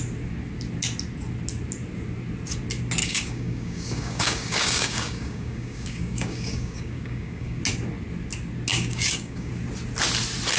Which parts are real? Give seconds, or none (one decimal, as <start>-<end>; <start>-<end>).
0.0-3.0; 7.6-8.7; 9.5-10.6